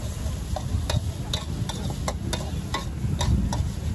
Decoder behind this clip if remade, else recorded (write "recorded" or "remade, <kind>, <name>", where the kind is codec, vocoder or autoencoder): recorded